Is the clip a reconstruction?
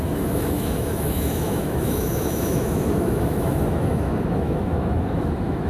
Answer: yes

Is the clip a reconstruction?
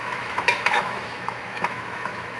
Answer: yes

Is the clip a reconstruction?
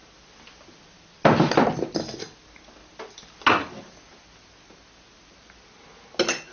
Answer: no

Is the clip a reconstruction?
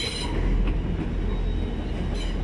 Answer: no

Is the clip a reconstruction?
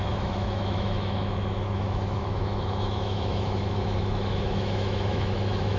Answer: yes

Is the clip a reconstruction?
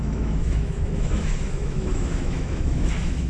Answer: yes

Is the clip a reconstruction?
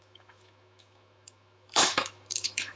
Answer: yes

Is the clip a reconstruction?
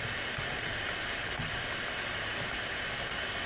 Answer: no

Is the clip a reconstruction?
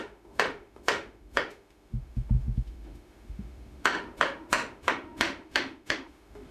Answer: yes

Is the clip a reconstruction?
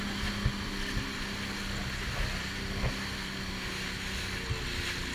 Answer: no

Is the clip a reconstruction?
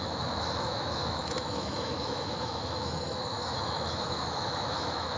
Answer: yes